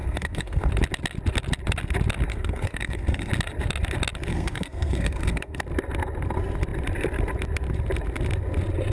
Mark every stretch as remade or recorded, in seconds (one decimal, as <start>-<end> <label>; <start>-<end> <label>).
0.0-0.7 remade; 0.7-2.3 recorded; 2.3-3.3 remade; 3.3-4.3 recorded; 4.3-5.6 remade; 5.6-8.9 recorded